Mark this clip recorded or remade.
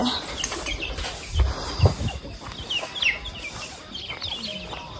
recorded